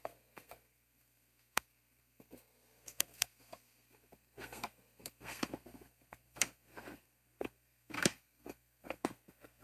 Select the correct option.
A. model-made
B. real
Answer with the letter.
A